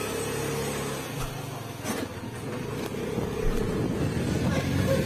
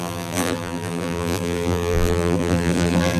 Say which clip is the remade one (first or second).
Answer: second